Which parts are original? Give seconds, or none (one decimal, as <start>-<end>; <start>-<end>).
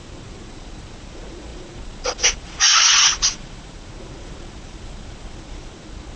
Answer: none